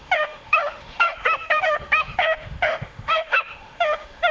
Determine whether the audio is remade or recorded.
remade